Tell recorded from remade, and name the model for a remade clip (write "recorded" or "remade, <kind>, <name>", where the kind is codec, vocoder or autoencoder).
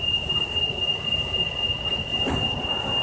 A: recorded